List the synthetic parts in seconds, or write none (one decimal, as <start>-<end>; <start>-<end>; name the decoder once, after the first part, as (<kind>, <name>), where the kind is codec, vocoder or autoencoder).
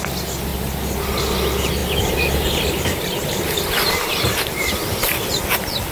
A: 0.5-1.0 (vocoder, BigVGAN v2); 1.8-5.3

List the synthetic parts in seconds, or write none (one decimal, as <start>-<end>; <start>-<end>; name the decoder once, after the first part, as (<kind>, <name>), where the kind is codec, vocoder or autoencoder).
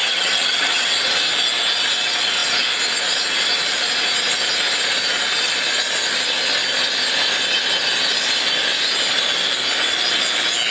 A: 0.0-0.9 (vocoder, HiFi-GAN)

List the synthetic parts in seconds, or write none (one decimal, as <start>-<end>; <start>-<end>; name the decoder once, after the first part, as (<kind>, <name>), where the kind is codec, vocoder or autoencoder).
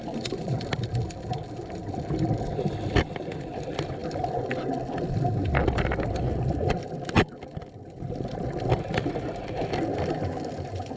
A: none